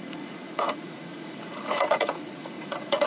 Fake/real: fake